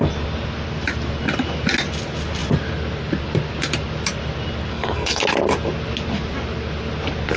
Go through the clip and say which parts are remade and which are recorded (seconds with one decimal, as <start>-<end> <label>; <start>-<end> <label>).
0.0-4.7 recorded; 4.7-5.2 remade; 5.2-7.4 recorded